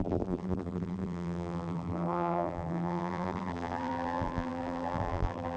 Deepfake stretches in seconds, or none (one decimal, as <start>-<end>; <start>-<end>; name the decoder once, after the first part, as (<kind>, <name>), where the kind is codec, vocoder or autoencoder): 0.0-5.6 (vocoder, BigVGAN v2)